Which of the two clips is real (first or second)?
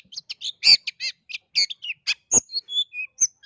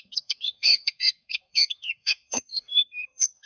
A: first